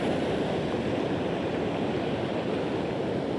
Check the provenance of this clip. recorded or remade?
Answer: recorded